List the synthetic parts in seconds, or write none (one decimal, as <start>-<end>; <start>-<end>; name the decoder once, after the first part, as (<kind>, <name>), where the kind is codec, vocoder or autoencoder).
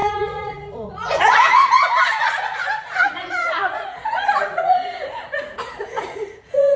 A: 0.0-1.6 (vocoder, Vocos); 2.2-6.8